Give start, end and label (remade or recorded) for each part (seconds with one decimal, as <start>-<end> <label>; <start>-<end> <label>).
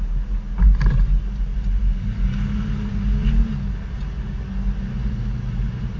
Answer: 0.0-6.0 recorded